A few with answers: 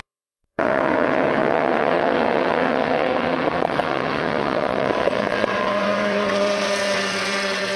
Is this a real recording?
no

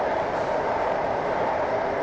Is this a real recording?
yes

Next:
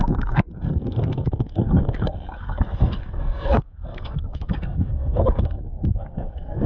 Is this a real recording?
no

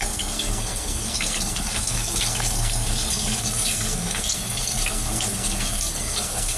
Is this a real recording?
no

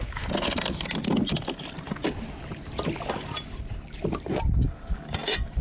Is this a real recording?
yes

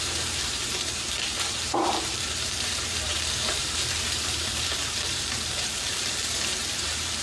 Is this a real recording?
no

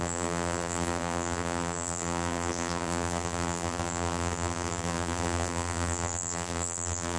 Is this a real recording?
no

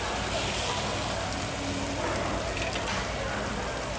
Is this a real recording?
yes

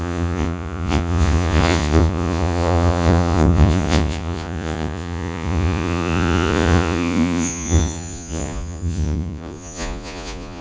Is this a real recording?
no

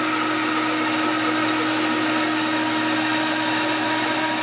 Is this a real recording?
yes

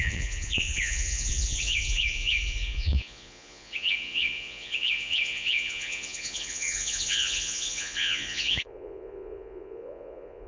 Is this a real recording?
no